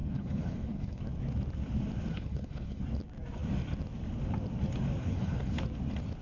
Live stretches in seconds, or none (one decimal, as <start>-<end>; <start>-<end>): 1.0-2.1; 2.8-5.0; 5.6-6.2